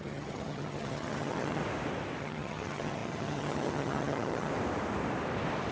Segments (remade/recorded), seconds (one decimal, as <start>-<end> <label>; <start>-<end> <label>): 0.0-1.6 remade; 1.6-2.2 recorded; 2.2-4.5 remade; 4.5-5.7 recorded